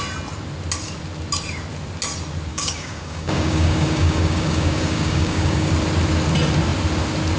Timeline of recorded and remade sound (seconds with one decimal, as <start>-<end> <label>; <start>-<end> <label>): 0.0-2.5 recorded; 2.5-5.7 remade; 5.7-7.4 recorded